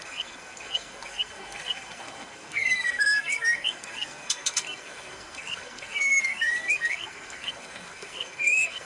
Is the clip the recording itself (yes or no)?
no